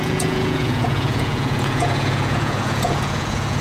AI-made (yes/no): yes